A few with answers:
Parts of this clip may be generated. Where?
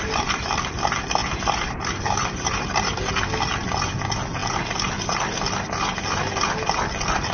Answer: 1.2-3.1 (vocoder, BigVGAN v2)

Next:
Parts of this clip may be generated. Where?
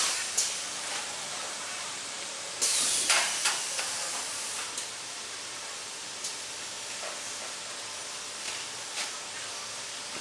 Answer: 1.7-3.5 (vocoder, BigVGAN v2)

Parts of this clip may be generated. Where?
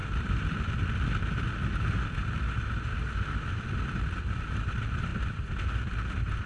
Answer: 3.9-6.5 (vocoder, BigVGAN v2)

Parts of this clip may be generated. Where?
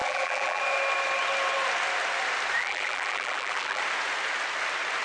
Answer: 0.0-0.6 (vocoder, BigVGAN v2); 2.6-3.8